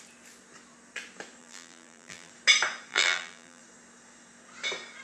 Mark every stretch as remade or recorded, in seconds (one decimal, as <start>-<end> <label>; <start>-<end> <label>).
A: 0.0-1.4 recorded; 1.4-2.3 remade; 2.3-2.9 recorded; 2.9-3.6 remade; 3.6-5.0 recorded